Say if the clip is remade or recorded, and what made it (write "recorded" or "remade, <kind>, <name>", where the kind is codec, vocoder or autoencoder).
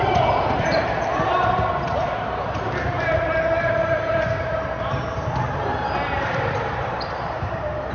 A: remade, vocoder, BigVGAN v2